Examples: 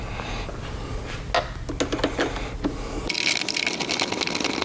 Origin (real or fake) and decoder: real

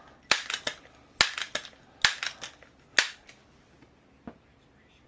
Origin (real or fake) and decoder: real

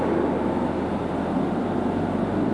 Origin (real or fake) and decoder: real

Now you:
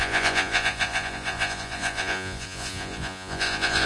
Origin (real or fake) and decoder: fake, vocoder, Vocos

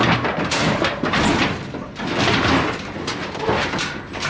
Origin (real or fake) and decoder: real